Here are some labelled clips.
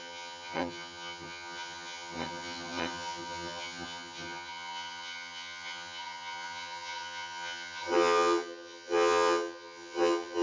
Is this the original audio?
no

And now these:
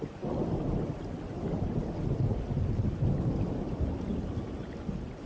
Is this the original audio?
yes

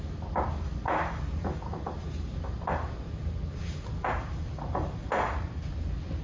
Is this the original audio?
yes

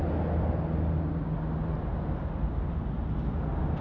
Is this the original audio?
yes